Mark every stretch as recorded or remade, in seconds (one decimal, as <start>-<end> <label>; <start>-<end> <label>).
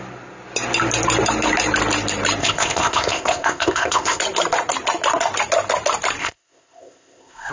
0.0-2.4 recorded; 2.4-4.2 remade; 4.2-6.2 recorded; 6.2-7.5 remade